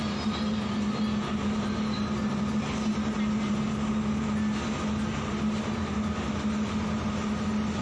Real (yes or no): yes